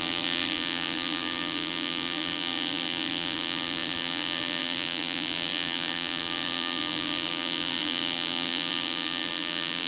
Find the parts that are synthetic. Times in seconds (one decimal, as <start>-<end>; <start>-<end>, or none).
0.0-9.9

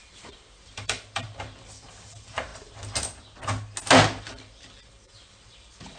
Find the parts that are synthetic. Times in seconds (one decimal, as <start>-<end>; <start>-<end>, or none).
0.0-2.5; 4.2-6.0

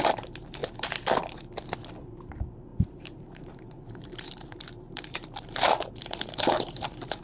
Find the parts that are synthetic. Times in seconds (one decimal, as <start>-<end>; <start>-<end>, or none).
2.7-7.2